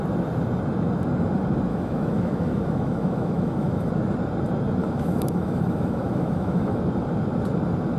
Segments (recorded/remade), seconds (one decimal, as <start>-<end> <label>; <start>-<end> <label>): 0.0-1.7 recorded; 1.7-3.9 remade; 3.9-4.8 recorded; 4.8-6.8 remade; 6.8-8.0 recorded